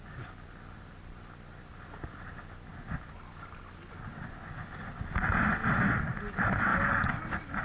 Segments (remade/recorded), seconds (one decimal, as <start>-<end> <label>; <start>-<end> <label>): 0.0-7.6 recorded